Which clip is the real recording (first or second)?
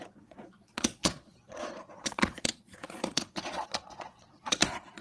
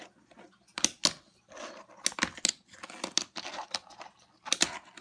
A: second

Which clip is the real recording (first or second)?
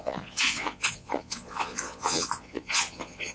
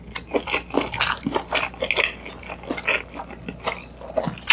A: second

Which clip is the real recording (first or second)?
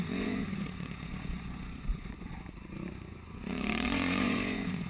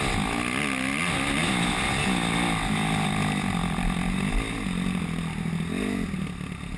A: second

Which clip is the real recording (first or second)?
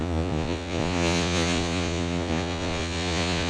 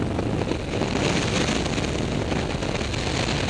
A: second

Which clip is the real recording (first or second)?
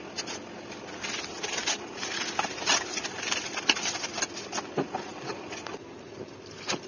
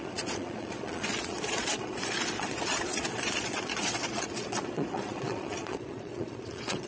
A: first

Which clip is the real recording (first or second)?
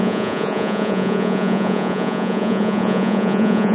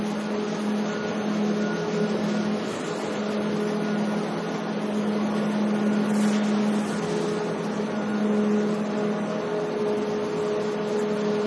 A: second